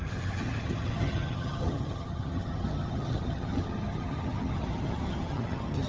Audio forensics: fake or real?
fake